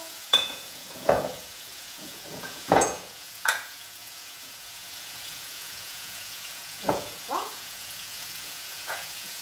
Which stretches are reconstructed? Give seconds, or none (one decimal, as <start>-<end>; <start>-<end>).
0.0-9.4